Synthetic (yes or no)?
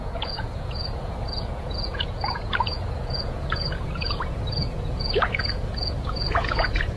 yes